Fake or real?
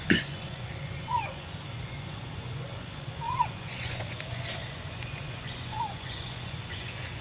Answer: fake